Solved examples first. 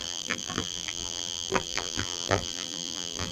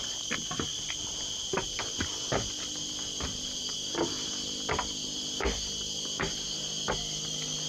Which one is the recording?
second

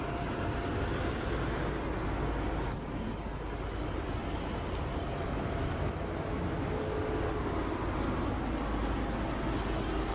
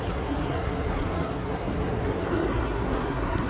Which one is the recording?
first